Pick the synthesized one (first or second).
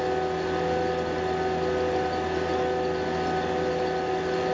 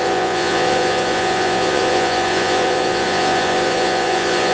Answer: second